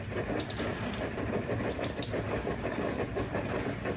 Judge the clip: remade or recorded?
recorded